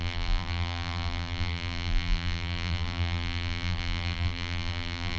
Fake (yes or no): yes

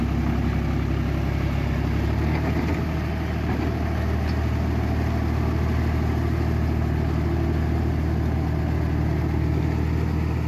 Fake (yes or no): no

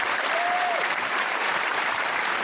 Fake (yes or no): yes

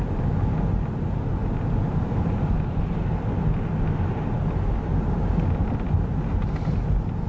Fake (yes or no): no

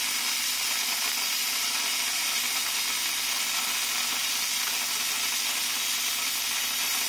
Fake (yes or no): no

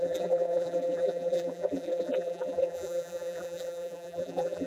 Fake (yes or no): yes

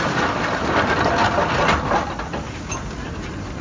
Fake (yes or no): no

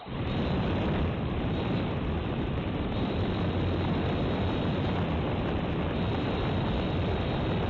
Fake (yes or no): yes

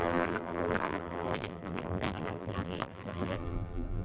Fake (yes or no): yes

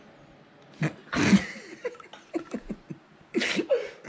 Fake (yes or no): no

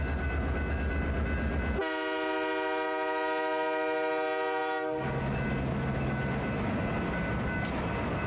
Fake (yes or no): no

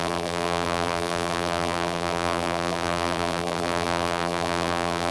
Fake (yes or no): yes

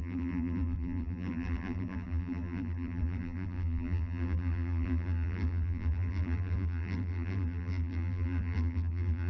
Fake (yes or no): yes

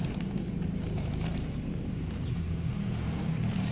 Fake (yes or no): yes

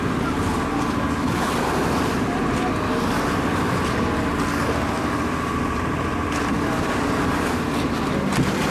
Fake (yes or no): no